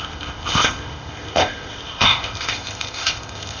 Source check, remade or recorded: remade